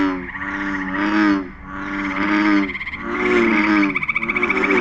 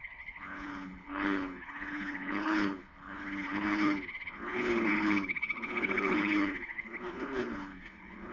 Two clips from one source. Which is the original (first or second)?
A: first